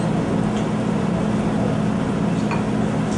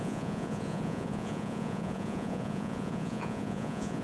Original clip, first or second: first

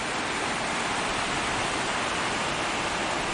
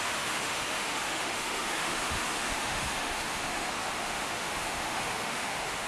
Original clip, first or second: first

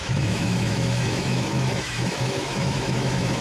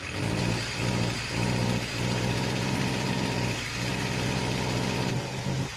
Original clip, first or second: second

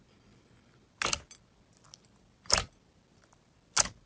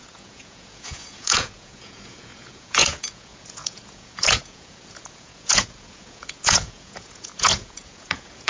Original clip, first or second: first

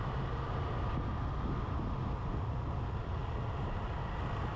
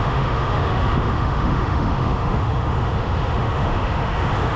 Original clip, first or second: first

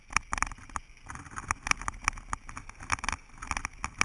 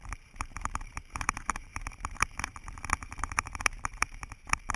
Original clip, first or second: first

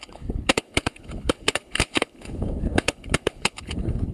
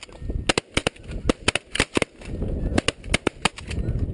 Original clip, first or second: second